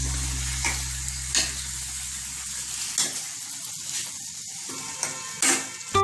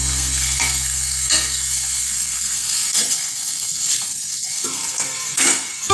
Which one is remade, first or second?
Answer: second